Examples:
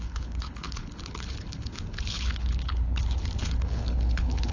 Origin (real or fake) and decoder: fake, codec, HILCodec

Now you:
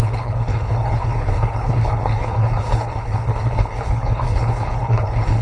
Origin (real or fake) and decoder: fake, codec, HILCodec